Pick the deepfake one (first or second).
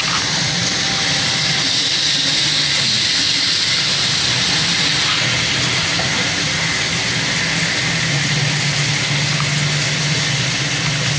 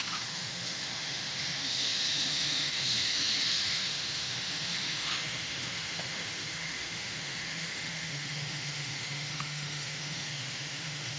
second